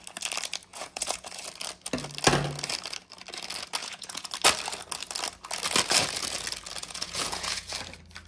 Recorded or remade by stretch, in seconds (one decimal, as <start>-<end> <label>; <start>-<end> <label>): 0.0-0.7 recorded; 0.7-1.3 remade; 1.3-3.8 recorded; 3.8-4.3 remade; 4.3-6.8 recorded; 6.8-7.7 remade; 7.7-8.3 recorded